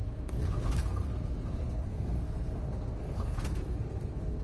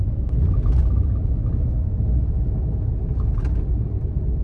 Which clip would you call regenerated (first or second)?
first